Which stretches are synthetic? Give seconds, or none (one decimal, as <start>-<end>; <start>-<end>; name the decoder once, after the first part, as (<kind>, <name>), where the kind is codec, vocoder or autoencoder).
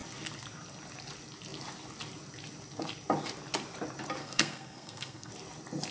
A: 4.2-5.3 (codec, SNAC)